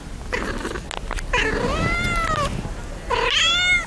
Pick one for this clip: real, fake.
real